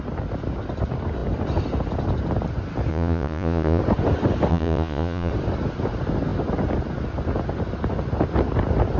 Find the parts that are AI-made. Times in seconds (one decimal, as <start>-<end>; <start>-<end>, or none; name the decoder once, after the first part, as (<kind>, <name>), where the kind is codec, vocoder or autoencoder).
2.9-3.8 (vocoder, Vocos); 4.5-5.3